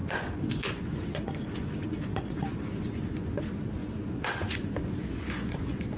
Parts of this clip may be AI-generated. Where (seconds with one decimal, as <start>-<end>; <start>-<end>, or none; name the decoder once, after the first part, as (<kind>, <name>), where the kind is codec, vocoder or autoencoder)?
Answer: 0.0-3.4 (vocoder, Vocos); 3.8-6.0